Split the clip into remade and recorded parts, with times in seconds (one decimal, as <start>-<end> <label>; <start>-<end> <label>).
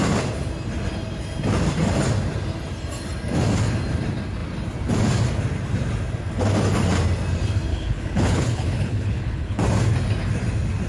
0.0-7.7 recorded; 7.7-9.6 remade; 9.6-10.9 recorded